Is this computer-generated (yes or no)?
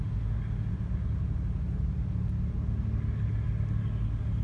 no